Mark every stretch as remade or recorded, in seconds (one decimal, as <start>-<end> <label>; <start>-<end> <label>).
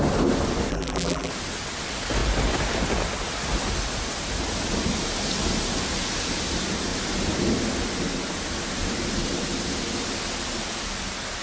0.0-0.7 recorded; 0.7-1.3 remade; 1.3-11.4 recorded